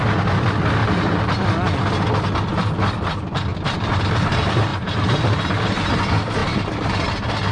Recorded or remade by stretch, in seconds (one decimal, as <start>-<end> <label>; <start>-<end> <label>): 0.0-0.8 recorded; 0.8-1.5 remade; 1.5-4.7 recorded; 4.7-5.4 remade; 5.4-6.4 recorded; 6.4-7.1 remade; 7.1-7.5 recorded